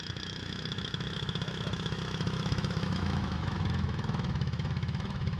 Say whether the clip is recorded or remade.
remade